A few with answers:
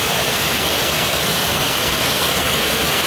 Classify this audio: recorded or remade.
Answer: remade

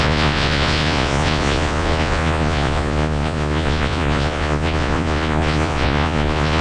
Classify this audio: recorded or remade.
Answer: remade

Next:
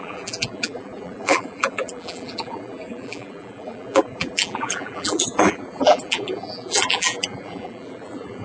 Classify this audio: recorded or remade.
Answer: remade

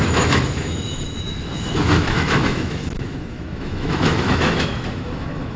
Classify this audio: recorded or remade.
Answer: remade